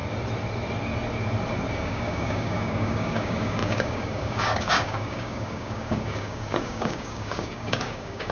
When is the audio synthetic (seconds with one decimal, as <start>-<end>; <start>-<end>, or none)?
1.7-8.3